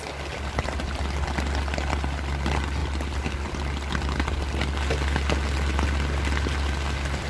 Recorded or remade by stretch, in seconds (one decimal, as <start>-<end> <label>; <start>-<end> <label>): 0.0-7.3 recorded